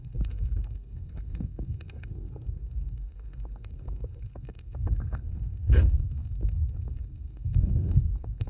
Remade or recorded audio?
remade